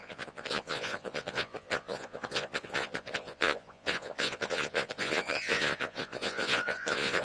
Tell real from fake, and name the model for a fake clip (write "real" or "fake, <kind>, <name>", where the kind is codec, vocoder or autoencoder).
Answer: fake, vocoder, Vocos